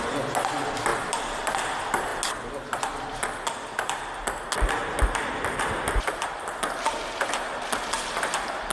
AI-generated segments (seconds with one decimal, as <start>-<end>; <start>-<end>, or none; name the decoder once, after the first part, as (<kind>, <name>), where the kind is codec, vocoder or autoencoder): none